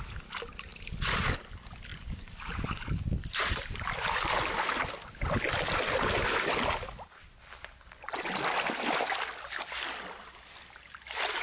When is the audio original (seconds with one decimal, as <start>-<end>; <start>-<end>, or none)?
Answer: 0.0-0.7; 1.3-1.9; 3.0-11.4